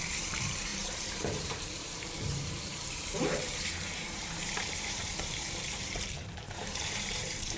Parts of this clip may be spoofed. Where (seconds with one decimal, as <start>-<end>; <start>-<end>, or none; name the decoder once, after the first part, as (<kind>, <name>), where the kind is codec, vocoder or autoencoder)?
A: 0.0-7.6 (vocoder, BigVGAN v2)